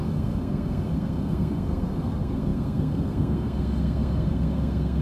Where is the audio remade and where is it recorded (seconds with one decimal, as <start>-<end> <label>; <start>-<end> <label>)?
0.0-5.0 remade